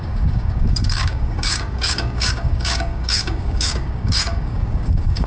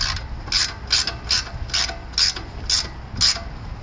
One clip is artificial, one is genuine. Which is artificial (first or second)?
first